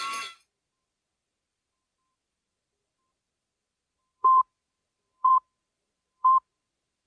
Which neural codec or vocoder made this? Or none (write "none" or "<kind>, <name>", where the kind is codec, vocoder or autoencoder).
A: vocoder, BigVGAN v2